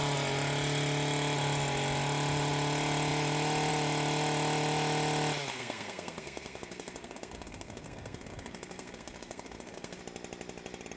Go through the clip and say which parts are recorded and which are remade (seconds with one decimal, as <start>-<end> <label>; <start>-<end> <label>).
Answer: 0.0-5.5 recorded; 5.5-10.0 remade; 10.0-11.0 recorded